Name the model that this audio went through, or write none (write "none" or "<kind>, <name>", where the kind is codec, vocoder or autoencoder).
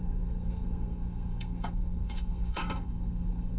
codec, SNAC